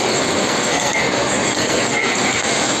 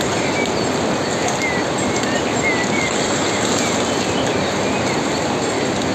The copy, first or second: first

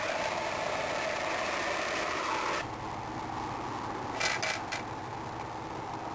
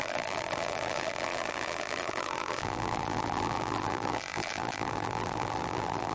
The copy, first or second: second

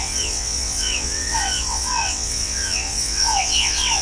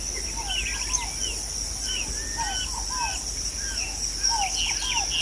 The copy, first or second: first